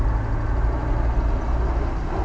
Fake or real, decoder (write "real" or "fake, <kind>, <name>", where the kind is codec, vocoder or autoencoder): real